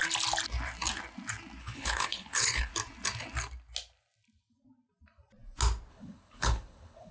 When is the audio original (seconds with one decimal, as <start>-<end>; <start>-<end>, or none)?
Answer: 0.0-1.6; 2.7-5.9